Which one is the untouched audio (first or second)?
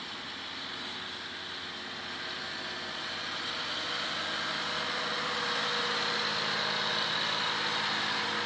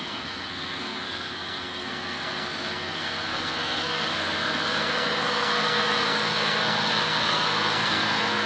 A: first